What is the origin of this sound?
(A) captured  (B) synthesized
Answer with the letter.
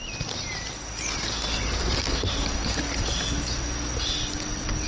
A